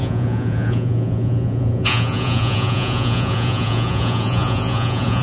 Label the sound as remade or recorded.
remade